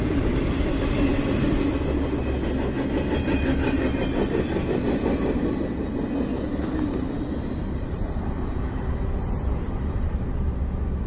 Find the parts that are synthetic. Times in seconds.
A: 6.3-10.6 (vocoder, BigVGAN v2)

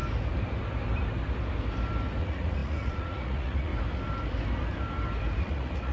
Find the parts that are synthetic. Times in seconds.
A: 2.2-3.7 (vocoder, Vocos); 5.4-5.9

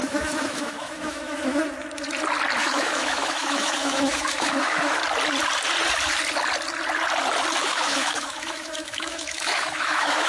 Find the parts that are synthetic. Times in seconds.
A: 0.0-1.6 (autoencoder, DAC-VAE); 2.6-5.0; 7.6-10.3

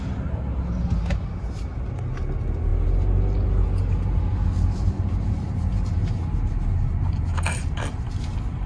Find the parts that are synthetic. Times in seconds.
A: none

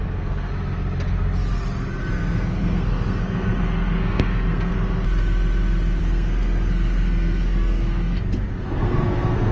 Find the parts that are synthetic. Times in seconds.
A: 0.0-0.5 (codec, SNAC); 2.1-4.7; 6.0-9.5

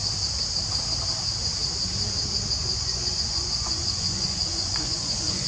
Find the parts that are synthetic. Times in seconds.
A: 2.6-5.5 (vocoder, Vocos)

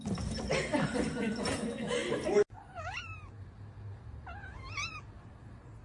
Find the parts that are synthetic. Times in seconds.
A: none